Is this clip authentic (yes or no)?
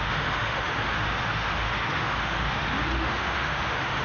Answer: no